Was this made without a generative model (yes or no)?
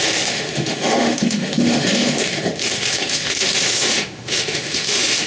no